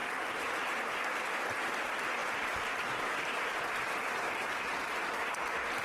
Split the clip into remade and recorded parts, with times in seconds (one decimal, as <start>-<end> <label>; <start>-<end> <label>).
0.0-5.8 recorded

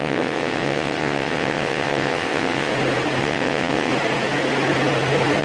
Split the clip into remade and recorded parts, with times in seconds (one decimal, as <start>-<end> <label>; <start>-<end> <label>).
0.0-2.7 remade; 2.7-3.2 recorded; 3.2-3.9 remade; 3.9-5.4 recorded

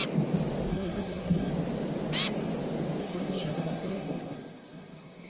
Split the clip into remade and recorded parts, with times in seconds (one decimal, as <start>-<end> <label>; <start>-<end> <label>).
0.0-0.7 recorded; 0.7-1.5 remade; 1.5-3.0 recorded; 3.0-5.3 remade